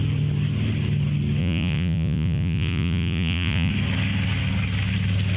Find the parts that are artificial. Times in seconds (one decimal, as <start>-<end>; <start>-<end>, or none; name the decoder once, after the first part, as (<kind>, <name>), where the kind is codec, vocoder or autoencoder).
1.4-3.7 (vocoder, Vocos)